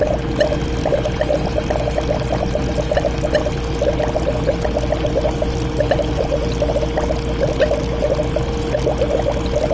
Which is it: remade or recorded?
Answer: recorded